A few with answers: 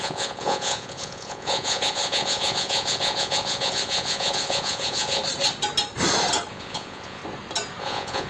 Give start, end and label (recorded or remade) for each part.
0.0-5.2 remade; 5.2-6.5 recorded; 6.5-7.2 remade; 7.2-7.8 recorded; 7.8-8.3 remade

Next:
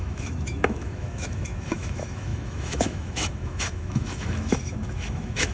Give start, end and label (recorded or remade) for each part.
0.0-5.5 remade

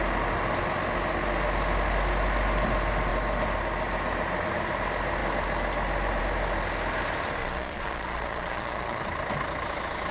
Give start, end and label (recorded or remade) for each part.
0.0-7.4 recorded; 7.4-9.0 remade; 9.0-10.1 recorded

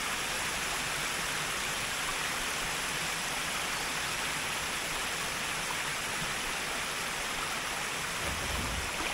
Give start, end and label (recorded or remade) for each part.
0.0-9.1 recorded

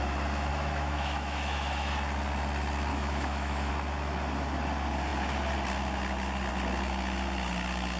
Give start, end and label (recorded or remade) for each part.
0.0-0.5 recorded; 0.5-1.9 remade; 1.9-2.9 recorded; 2.9-3.7 remade; 3.7-8.0 recorded

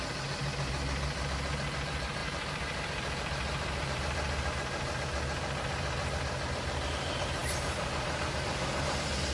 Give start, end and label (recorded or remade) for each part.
0.0-9.3 remade

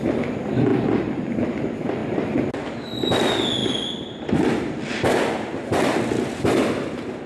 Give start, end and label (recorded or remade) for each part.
0.0-7.3 recorded